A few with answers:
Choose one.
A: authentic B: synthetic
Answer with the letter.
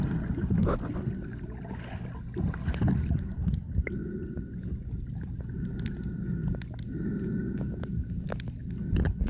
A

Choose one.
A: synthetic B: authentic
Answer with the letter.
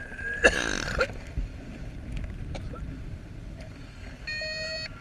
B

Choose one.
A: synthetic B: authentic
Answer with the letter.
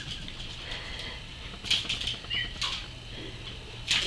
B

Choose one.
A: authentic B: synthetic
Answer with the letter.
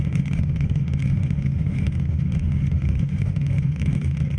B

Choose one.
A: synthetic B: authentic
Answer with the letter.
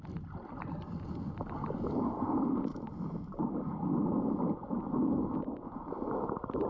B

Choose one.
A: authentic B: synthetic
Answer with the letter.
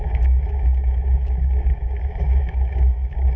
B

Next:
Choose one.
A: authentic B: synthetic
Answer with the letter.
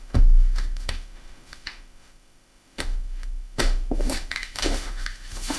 B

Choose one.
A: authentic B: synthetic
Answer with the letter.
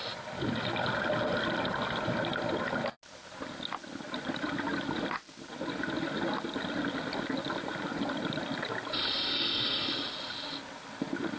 A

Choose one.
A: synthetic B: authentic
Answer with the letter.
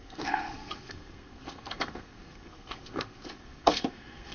A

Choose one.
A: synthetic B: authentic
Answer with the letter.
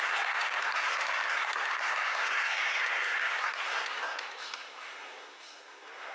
A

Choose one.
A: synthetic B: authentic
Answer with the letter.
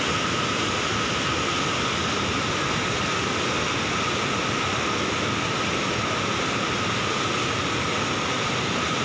B